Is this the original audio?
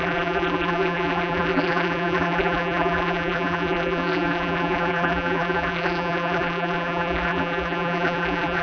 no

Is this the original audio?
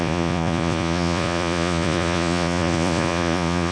no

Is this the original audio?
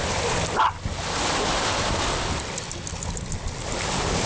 yes